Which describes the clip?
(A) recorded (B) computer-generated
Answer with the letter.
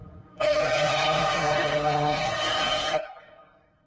B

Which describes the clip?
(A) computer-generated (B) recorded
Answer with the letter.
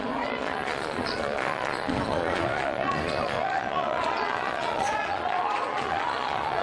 A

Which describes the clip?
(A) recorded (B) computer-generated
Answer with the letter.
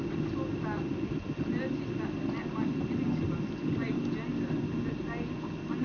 A